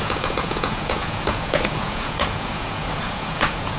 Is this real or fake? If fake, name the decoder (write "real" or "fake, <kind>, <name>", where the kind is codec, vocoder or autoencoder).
fake, vocoder, Vocos